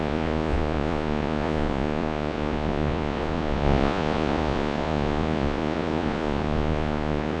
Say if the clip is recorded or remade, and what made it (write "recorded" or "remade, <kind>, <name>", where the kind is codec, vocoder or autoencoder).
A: remade, vocoder, Vocos